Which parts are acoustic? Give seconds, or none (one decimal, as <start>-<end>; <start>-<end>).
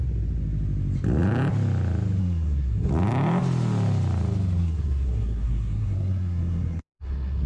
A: 0.0-2.2; 2.9-4.6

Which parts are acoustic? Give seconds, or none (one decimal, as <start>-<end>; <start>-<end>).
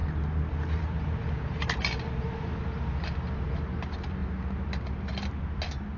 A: 0.0-6.0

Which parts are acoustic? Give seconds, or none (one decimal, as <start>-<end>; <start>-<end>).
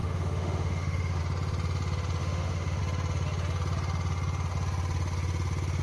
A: 1.2-2.2; 2.8-5.8